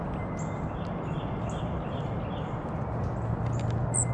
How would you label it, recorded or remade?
recorded